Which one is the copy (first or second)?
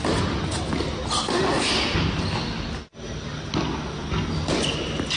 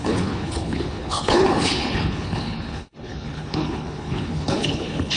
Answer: second